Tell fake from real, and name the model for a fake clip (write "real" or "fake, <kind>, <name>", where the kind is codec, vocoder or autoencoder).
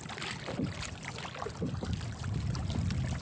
real